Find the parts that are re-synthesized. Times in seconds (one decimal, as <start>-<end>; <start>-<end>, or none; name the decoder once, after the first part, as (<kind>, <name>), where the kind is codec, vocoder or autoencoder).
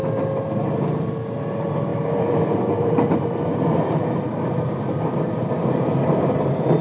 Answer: 1.9-6.0 (vocoder, BigVGAN v2)